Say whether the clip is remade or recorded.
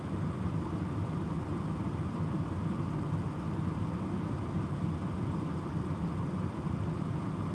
recorded